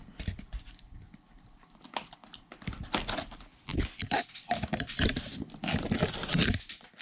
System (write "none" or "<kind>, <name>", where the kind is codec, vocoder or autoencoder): none